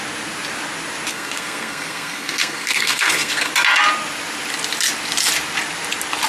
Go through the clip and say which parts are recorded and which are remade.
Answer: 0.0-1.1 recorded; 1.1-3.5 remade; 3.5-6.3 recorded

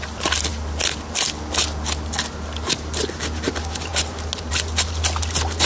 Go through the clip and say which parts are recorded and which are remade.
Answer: 0.0-5.7 recorded

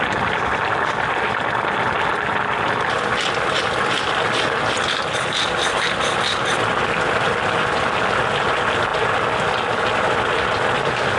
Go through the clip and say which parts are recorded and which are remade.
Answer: 0.0-11.2 recorded

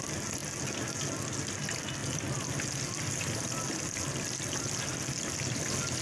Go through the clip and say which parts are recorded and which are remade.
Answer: 0.0-6.0 recorded

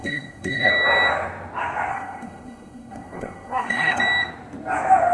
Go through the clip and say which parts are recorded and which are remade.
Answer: 0.0-0.7 remade; 0.7-1.9 recorded; 1.9-4.0 remade; 4.0-5.1 recorded

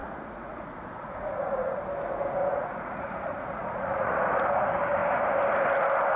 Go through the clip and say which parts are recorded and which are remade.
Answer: 0.0-1.8 remade; 1.8-2.4 recorded; 2.4-4.2 remade; 4.2-6.2 recorded

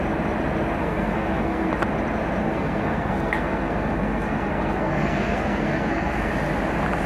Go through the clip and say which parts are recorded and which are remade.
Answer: 0.0-0.8 recorded; 0.8-1.7 remade; 1.7-2.4 recorded; 2.4-6.3 remade; 6.3-7.1 recorded

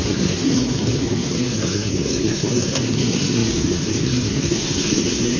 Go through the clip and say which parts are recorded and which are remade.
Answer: 0.0-5.4 remade